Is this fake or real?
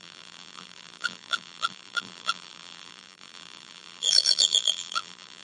fake